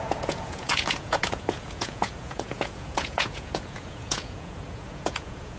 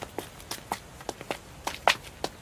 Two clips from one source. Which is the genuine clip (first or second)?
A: second